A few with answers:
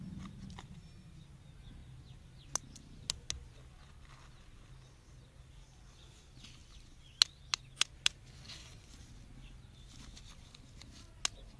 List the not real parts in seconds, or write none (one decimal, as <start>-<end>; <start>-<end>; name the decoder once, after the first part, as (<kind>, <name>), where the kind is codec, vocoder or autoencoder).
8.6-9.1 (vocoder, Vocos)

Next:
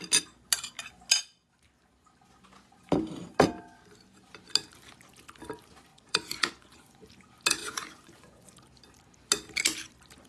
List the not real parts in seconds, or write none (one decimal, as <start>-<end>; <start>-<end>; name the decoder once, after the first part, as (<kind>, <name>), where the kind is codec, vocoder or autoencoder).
5.9-7.1 (vocoder, Vocos); 7.6-8.5

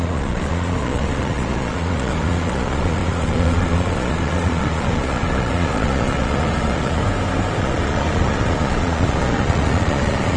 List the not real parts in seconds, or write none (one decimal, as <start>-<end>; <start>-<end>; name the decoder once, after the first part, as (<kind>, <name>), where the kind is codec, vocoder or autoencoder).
0.0-7.0 (vocoder, Vocos); 7.6-10.4

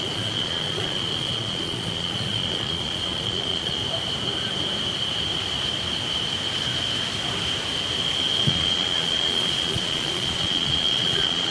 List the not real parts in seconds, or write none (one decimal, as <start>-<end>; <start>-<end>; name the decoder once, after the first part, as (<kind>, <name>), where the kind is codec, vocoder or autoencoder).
0.0-3.8 (vocoder, Vocos); 8.4-11.5

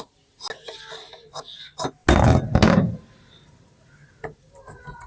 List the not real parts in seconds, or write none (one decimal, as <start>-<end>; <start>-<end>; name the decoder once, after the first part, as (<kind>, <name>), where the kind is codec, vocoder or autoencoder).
none